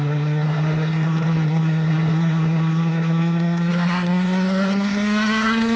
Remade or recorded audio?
remade